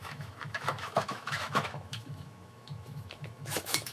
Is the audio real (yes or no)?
no